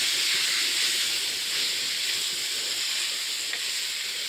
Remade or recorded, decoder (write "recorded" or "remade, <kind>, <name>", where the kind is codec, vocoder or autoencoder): recorded